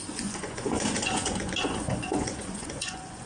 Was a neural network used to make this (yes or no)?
yes